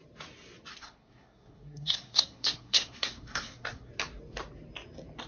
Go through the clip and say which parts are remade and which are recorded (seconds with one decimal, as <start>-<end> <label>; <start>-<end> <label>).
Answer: 0.0-0.7 recorded; 0.7-3.9 remade; 3.9-5.3 recorded